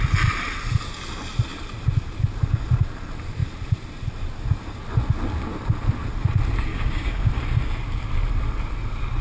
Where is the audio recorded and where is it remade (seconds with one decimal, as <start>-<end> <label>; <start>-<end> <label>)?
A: 0.0-6.7 recorded; 6.7-7.3 remade; 7.3-9.2 recorded